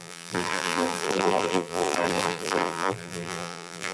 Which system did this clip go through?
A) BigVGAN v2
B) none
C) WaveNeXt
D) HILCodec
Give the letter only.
A